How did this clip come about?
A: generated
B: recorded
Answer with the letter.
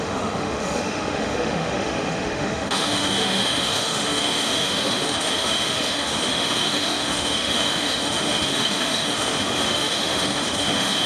A